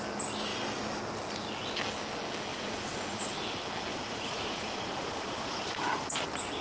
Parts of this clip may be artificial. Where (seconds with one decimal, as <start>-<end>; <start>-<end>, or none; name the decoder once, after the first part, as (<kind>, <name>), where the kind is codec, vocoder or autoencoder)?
2.5-3.3 (vocoder, Vocos); 3.9-6.0